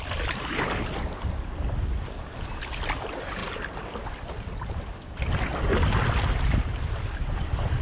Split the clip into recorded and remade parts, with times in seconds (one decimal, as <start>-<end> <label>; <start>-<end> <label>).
0.0-7.8 recorded

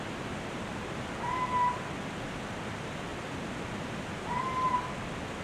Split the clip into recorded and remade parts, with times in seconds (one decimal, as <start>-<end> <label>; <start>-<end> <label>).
0.0-5.4 recorded

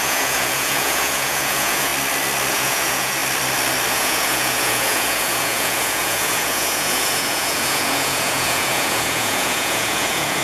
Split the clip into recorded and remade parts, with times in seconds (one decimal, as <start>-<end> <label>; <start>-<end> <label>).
0.0-1.9 remade; 1.9-2.5 recorded; 2.5-3.2 remade; 3.2-3.9 recorded; 3.9-10.4 remade

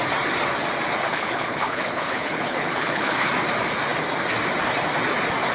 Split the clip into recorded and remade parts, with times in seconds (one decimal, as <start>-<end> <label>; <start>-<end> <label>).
0.0-1.1 recorded; 1.1-3.3 remade; 3.3-5.5 recorded

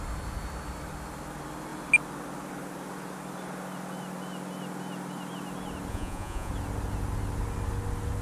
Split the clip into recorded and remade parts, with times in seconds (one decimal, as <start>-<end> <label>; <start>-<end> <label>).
0.0-5.9 recorded; 5.9-6.5 remade; 6.5-8.2 recorded